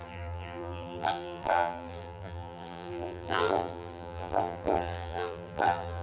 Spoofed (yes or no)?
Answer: yes